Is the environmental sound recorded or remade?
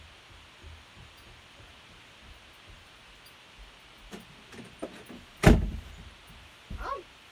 recorded